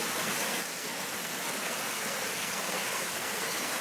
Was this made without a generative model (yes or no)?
no